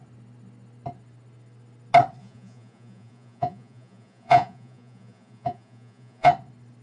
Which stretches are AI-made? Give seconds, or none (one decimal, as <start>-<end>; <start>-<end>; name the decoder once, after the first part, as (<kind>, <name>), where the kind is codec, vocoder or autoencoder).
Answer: 2.2-6.3 (vocoder, Vocos)